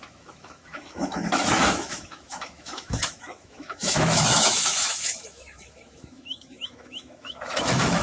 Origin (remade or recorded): remade